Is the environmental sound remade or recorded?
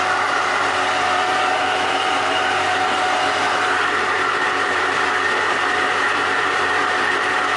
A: remade